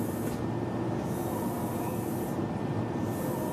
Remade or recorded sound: recorded